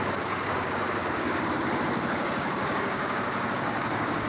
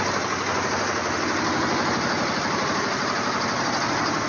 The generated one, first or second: first